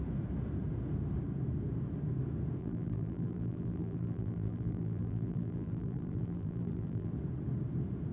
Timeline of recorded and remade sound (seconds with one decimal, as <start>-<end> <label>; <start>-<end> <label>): 0.0-2.6 recorded; 2.6-7.1 remade; 7.1-8.1 recorded